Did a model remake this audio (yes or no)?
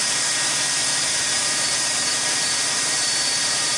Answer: yes